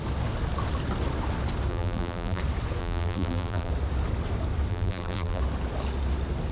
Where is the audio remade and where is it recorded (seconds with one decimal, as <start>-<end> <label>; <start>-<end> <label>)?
0.0-1.7 recorded; 1.7-2.4 remade; 2.4-2.8 recorded; 2.8-3.7 remade; 3.7-4.7 recorded; 4.7-5.4 remade; 5.4-6.5 recorded